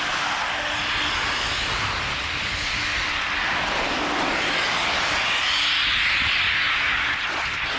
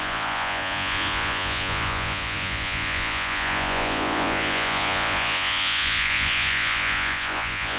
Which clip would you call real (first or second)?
first